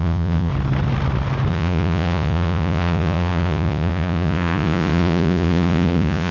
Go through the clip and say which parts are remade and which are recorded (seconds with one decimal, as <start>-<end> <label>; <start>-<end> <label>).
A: 0.0-0.5 remade; 0.5-1.5 recorded; 1.5-6.3 remade